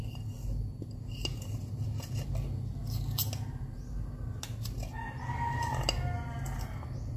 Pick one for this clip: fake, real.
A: real